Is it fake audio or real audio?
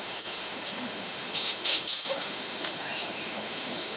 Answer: fake